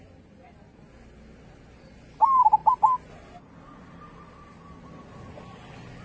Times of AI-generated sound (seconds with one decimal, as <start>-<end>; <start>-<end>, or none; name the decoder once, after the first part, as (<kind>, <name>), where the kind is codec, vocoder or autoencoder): none